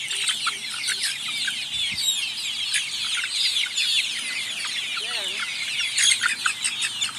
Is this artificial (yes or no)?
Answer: no